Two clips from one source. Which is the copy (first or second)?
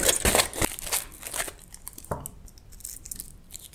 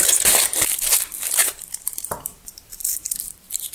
second